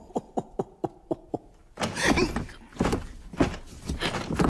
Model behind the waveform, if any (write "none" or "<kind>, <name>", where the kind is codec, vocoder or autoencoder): vocoder, BigVGAN v2